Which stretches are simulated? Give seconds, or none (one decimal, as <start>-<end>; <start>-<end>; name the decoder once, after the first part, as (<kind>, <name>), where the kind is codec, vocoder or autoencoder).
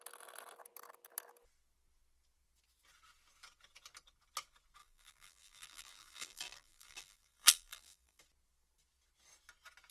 4.8-8.2 (vocoder, BigVGAN v2)